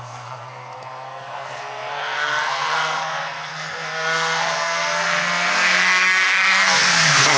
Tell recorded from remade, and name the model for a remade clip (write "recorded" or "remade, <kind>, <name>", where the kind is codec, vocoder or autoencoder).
remade, codec, SNAC